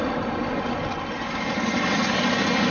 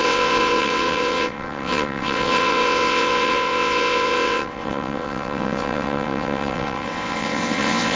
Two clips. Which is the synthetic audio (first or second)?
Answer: second